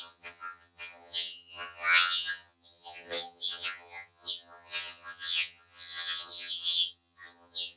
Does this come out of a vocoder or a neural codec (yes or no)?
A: yes